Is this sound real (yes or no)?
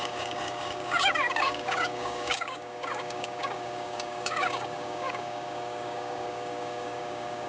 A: no